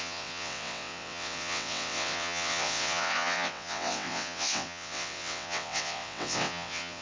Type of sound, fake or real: fake